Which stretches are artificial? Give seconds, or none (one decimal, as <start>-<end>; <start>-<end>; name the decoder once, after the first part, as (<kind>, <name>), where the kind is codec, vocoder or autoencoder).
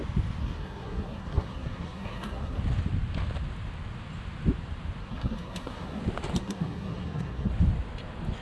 0.4-2.6 (codec, SNAC); 5.0-6.0; 6.4-7.5